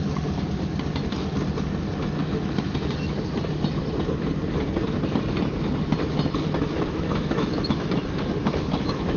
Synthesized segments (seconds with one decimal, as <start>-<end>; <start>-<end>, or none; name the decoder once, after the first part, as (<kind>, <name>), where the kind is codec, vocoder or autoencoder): 2.2-2.9 (autoencoder, DAC-VAE); 6.6-9.2